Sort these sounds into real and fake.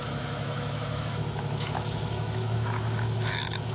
fake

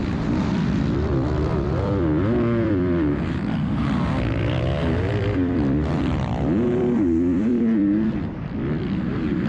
fake